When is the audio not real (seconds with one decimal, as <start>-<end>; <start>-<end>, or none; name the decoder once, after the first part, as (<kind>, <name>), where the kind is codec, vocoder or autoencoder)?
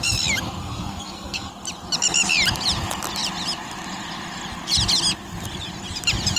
0.6-1.5 (codec, SNAC)